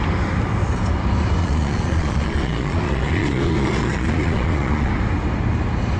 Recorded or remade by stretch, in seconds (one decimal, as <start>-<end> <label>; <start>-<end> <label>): 0.0-1.4 recorded; 1.4-4.9 remade; 4.9-6.0 recorded